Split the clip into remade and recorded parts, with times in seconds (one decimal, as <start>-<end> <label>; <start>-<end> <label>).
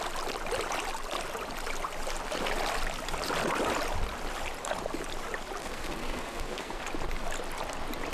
0.0-5.6 recorded; 5.6-6.8 remade; 6.8-8.1 recorded